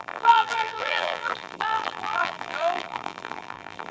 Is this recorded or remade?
remade